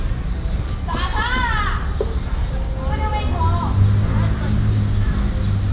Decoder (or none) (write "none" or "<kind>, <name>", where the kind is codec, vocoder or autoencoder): none